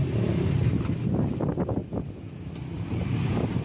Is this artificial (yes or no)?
no